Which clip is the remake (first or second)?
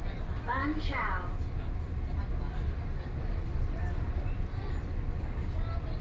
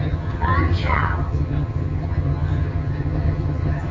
second